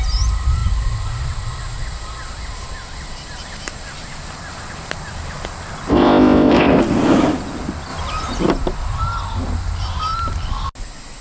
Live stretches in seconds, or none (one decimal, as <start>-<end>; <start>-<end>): 0.0-5.9; 6.8-11.2

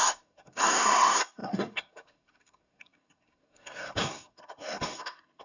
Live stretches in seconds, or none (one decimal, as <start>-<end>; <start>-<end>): none